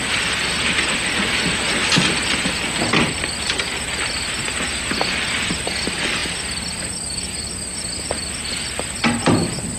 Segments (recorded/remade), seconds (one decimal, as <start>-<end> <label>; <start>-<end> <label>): 0.0-9.8 recorded